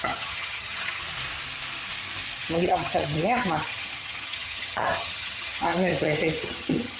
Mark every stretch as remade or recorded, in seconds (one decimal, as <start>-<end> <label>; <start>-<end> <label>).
0.0-1.0 remade; 1.0-2.4 recorded; 2.4-7.0 remade